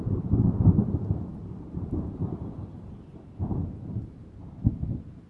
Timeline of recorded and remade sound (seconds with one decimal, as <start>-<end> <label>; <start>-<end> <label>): 0.0-1.4 recorded; 1.4-4.6 remade; 4.6-5.3 recorded